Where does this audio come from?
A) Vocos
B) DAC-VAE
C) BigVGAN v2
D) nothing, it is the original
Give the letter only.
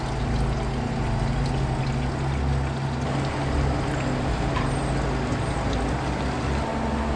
D